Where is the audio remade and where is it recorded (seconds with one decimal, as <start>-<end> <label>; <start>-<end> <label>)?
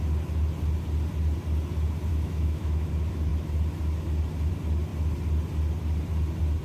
0.0-2.1 recorded; 2.1-2.9 remade; 2.9-6.6 recorded